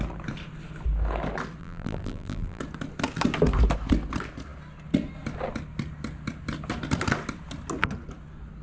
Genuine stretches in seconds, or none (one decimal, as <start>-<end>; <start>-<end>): 0.0-1.6; 2.6-8.6